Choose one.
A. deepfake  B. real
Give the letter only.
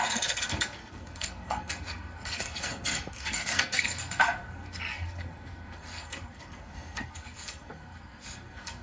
A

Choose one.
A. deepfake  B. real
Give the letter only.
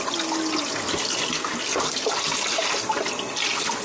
B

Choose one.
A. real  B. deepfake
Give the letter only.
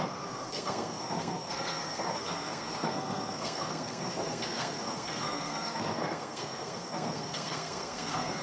B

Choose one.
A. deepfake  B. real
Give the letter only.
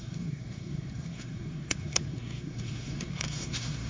A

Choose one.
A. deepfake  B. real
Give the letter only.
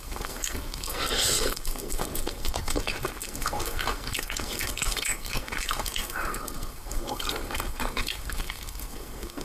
A